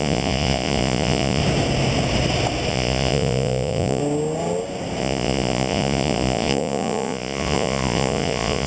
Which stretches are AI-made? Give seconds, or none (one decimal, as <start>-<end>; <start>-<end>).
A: 0.0-1.4; 2.7-4.0; 5.0-8.7